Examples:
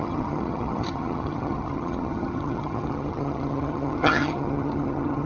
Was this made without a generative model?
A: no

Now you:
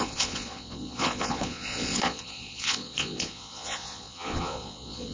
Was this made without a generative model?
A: no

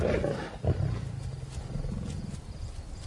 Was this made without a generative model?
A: yes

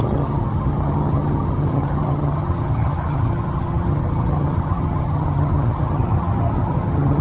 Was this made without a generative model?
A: no